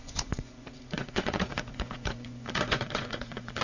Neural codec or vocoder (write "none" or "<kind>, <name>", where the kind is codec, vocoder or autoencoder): vocoder, Vocos